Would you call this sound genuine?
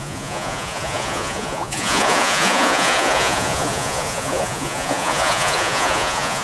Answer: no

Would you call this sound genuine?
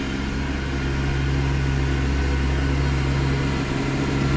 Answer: yes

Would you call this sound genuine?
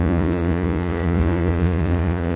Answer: no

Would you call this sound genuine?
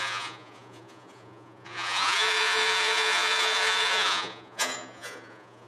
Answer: no